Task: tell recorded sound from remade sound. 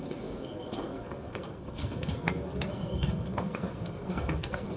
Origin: remade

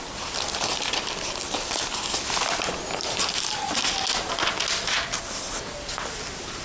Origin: recorded